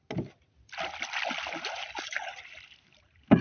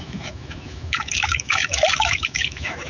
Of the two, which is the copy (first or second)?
second